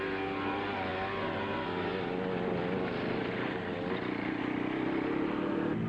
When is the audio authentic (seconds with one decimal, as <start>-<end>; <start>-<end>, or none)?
0.0-5.9